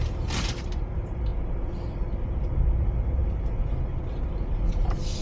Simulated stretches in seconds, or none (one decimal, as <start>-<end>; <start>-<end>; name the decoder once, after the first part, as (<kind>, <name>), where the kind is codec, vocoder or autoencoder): 0.0-1.3 (vocoder, BigVGAN v2); 2.8-5.2